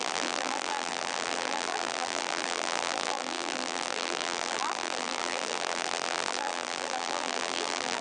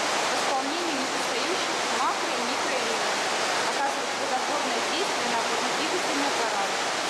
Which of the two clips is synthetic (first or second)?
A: first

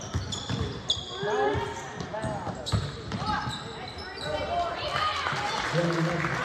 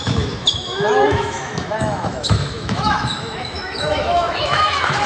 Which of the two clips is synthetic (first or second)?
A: second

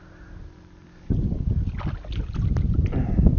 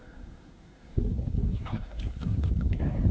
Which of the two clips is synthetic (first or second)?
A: second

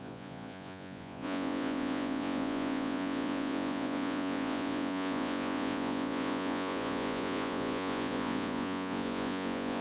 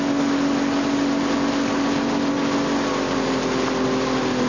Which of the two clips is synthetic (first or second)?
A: first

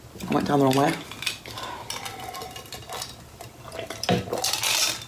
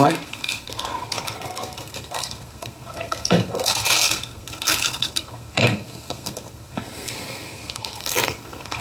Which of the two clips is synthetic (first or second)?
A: second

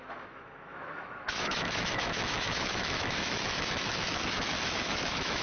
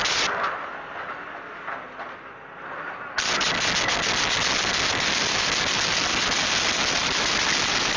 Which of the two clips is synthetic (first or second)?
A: first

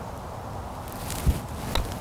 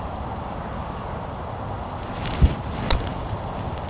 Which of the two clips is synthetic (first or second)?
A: second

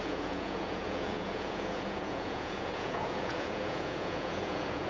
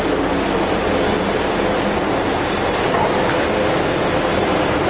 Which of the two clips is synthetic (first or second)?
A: first